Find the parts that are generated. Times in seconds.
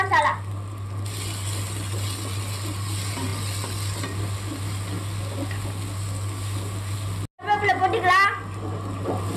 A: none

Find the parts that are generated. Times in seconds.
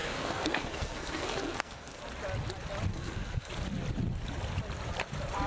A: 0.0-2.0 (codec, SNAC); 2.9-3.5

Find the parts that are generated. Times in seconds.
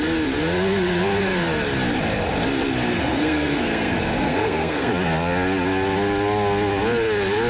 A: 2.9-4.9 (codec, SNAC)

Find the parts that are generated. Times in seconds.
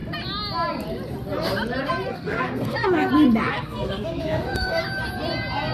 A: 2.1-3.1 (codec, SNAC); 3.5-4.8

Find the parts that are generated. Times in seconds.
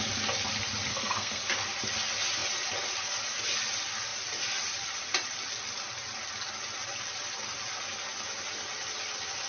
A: 0.9-1.4 (codec, SNAC)